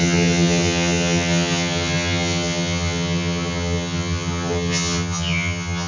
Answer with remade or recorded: remade